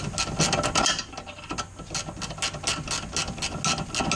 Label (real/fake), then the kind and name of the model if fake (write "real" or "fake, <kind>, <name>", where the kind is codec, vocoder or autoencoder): real